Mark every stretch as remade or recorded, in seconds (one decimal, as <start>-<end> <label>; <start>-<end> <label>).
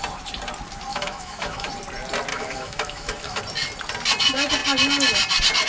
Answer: 0.0-0.9 recorded; 0.9-1.7 remade; 1.7-2.3 recorded; 2.3-3.4 remade; 3.4-5.7 recorded